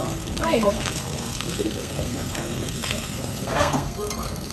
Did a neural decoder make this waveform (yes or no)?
yes